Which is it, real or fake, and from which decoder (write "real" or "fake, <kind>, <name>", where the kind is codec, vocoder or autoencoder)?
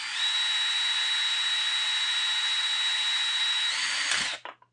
real